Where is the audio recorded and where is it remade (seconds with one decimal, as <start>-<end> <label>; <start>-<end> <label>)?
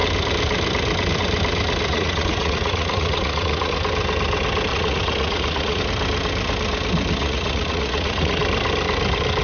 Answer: 0.0-1.9 recorded; 1.9-3.7 remade; 3.7-4.7 recorded; 4.7-5.8 remade; 5.8-7.2 recorded; 7.2-8.4 remade; 8.4-9.4 recorded